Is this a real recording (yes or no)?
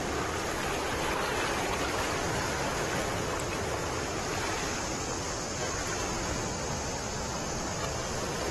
yes